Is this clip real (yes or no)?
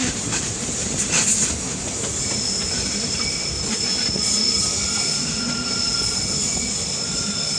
yes